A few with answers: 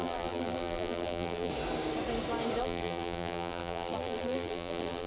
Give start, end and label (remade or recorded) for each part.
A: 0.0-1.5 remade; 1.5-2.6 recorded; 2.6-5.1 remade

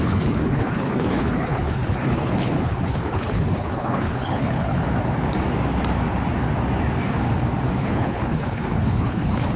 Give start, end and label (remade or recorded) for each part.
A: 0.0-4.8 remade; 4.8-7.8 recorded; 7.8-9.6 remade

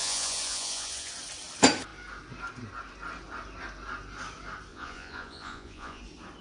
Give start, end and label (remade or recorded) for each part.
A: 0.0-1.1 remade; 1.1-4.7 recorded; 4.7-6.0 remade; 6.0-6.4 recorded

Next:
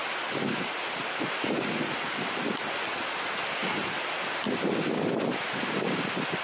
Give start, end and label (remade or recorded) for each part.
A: 0.0-6.4 recorded